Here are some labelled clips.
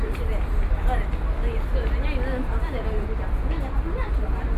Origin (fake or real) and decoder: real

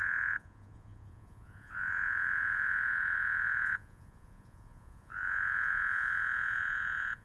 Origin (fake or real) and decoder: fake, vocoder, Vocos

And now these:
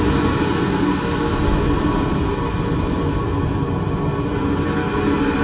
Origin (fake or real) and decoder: real